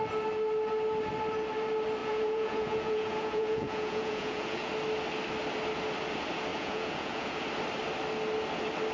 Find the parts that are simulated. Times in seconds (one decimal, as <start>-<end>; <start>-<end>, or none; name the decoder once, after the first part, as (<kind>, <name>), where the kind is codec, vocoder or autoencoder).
2.0-4.7 (vocoder, Vocos); 6.5-7.4